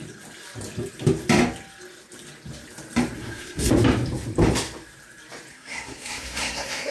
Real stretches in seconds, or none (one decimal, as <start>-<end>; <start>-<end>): 0.0-3.2; 3.7-5.5